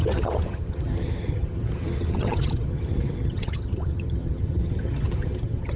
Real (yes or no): no